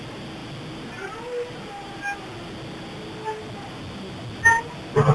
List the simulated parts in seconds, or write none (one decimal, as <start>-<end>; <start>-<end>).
none